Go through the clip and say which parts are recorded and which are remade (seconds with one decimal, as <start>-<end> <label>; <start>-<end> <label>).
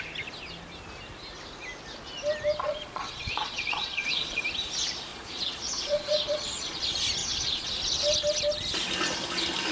0.0-2.6 recorded; 2.6-4.4 remade; 4.4-5.1 recorded; 5.1-6.8 remade; 6.8-7.2 recorded; 7.2-7.8 remade; 7.8-9.7 recorded